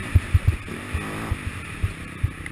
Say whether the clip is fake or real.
real